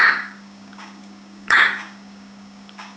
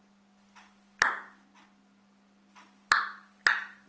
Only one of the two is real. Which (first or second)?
second